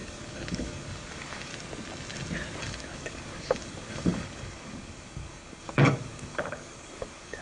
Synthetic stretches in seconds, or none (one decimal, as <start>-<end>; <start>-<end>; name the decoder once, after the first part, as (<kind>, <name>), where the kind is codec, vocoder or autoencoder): 0.0-1.5 (codec, DAC); 2.6-7.4